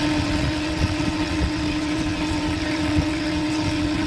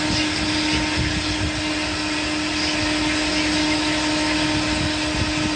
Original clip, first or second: second